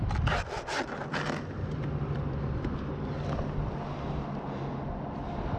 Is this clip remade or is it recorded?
recorded